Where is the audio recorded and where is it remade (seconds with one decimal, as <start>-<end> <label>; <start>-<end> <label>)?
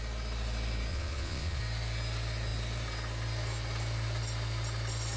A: 0.0-0.9 recorded; 0.9-1.6 remade; 1.6-5.2 recorded